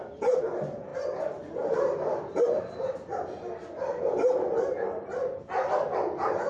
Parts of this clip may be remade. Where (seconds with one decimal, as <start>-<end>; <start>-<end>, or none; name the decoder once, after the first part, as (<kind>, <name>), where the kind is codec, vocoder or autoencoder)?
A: none